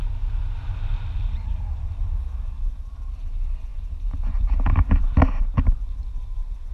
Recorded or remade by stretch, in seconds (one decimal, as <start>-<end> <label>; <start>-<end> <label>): 0.0-6.7 recorded